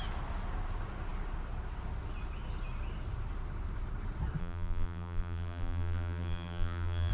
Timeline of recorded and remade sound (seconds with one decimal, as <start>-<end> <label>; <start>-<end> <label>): 0.0-4.4 recorded; 4.4-7.1 remade